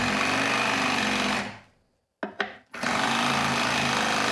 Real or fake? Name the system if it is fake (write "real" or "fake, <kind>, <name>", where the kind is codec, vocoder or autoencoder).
real